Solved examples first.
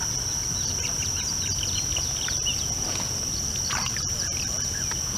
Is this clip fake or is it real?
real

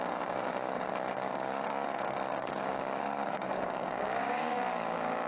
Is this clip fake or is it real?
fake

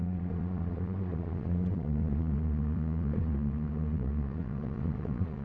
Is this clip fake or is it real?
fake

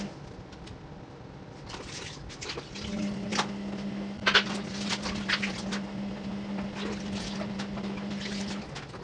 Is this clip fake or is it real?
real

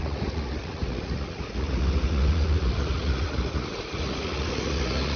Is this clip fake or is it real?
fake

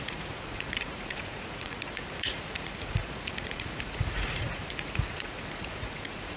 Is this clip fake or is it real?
fake